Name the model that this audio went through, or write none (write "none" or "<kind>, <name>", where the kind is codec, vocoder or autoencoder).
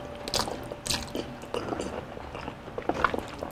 none